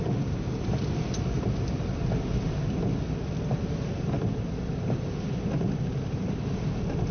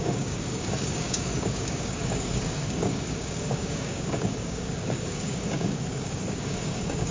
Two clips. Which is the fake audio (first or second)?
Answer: second